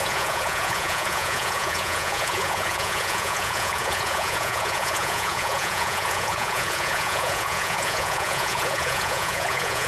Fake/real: fake